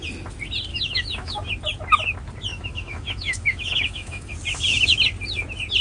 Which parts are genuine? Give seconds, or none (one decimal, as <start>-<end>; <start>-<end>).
0.0-0.7; 1.5-2.5; 4.3-5.8

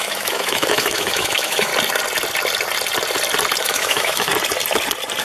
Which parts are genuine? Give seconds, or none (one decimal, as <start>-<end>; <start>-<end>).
1.7-3.6; 4.3-5.2